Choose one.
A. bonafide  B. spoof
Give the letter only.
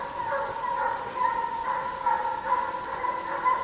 A